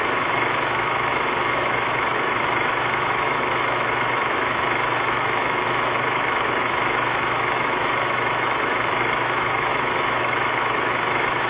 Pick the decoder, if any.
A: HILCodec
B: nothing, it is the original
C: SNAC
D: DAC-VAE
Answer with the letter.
D